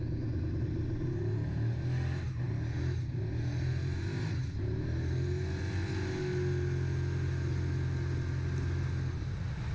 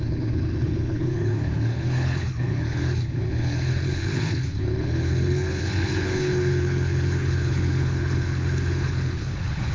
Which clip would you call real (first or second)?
first